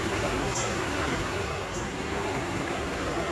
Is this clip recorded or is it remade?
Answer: remade